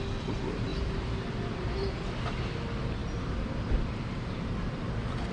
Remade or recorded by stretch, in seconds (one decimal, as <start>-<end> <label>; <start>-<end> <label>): 0.0-0.7 recorded; 0.7-1.9 remade; 1.9-3.0 recorded; 3.0-4.8 remade; 4.8-5.3 recorded